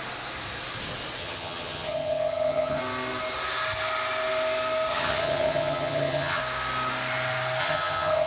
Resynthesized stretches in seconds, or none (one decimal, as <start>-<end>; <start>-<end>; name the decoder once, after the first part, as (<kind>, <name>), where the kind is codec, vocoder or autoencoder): 1.2-2.8 (vocoder, HiFi-GAN); 4.9-6.4; 7.6-8.3